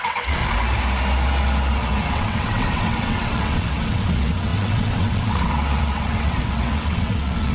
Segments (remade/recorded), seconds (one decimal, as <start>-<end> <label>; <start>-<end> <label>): 0.0-0.4 remade; 0.4-2.1 recorded; 2.1-7.5 remade